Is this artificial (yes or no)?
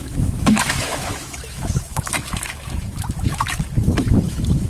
yes